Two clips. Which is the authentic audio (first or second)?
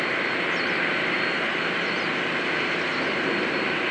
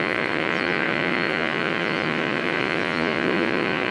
first